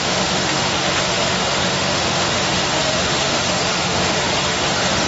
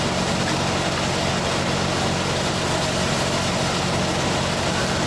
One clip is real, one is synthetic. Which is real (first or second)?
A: second